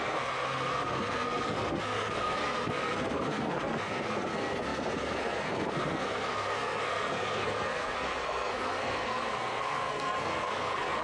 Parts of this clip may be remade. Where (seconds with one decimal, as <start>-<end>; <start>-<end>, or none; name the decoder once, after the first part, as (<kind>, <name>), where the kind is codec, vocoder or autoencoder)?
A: 0.0-11.0 (codec, SNAC)

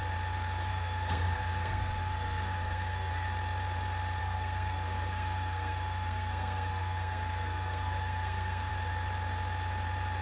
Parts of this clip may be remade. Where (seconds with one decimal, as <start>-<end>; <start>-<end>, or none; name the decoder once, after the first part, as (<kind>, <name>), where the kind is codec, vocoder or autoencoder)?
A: 0.7-3.1 (codec, SNAC); 4.2-8.7